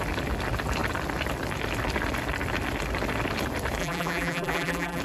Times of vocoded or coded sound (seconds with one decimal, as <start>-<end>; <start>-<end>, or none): 3.8-5.0